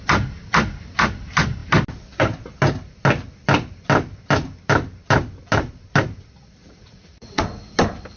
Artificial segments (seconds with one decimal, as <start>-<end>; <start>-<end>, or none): 6.6-7.4